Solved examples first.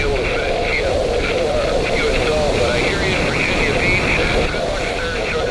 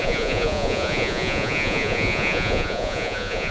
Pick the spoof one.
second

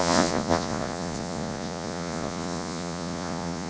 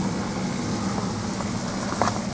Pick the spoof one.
first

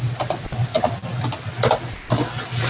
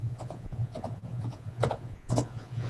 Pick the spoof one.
second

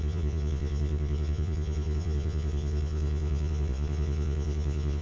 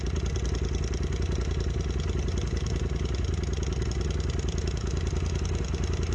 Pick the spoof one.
first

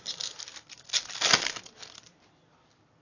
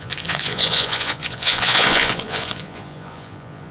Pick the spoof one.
second